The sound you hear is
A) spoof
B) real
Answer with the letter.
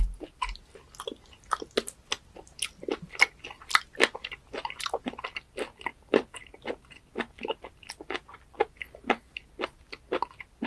B